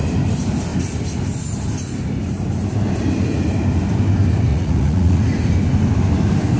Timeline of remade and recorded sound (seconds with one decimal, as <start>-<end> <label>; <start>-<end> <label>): 0.0-4.5 recorded; 4.5-5.2 remade; 5.2-6.6 recorded